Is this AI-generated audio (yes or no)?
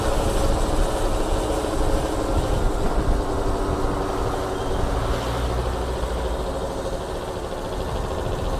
no